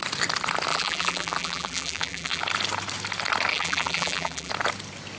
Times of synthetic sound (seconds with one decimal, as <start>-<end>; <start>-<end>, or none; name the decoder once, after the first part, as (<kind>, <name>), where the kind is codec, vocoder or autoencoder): 0.7-2.4 (vocoder, BigVGAN v2); 3.5-4.5